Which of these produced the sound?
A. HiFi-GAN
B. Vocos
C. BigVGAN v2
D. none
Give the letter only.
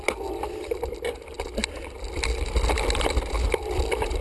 D